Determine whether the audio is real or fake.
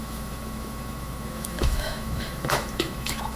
fake